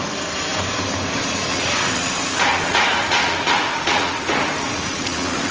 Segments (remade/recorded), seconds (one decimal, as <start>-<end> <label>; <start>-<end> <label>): 0.0-1.5 recorded; 1.5-2.1 remade; 2.1-2.5 recorded; 2.5-5.5 remade